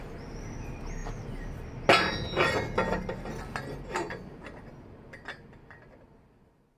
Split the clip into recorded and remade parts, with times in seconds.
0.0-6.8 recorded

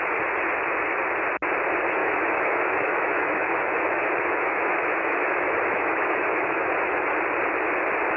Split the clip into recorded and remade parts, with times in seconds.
0.0-2.0 recorded; 2.0-6.7 remade; 6.7-8.2 recorded